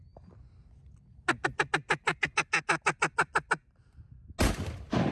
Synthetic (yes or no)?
no